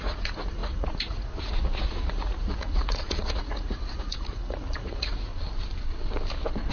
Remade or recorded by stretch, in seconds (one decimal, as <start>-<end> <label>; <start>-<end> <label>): 0.0-5.3 remade; 5.3-6.7 recorded